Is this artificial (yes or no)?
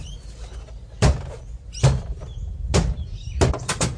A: no